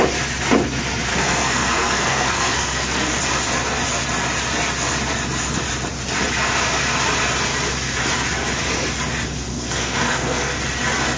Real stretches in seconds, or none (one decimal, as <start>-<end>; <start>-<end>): 0.0-1.1; 3.2-9.5; 10.6-11.2